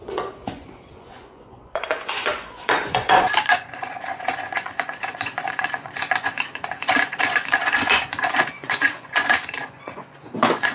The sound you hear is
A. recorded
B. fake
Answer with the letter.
B